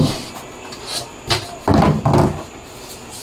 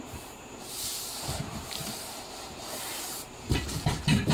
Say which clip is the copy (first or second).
second